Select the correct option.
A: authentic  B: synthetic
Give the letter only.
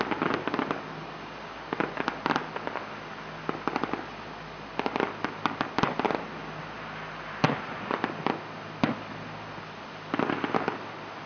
A